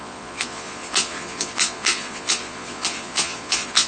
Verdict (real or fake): fake